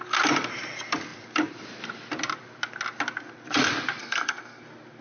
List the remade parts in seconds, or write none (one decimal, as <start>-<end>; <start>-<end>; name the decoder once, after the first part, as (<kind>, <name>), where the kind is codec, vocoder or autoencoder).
4.0-4.6 (codec, SNAC)